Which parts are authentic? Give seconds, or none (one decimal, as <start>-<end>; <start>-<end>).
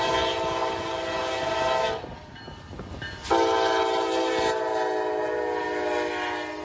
0.0-6.6